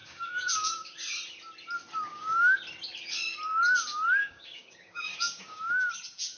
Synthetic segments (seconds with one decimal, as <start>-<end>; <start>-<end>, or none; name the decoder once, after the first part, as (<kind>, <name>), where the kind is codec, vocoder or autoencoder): 0.0-1.0 (codec, DAC); 2.1-2.6; 4.2-5.9